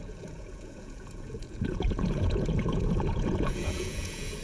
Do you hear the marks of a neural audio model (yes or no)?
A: yes